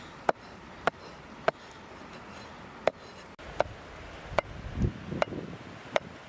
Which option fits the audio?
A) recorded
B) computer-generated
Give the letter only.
A